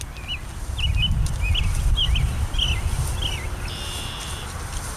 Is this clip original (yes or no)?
yes